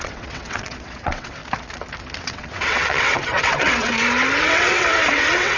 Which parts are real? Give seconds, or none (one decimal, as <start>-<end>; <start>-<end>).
1.4-2.2; 3.9-4.4